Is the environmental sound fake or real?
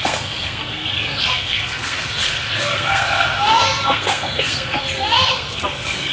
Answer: fake